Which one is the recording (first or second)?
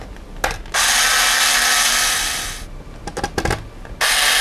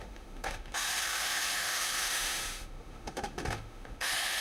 first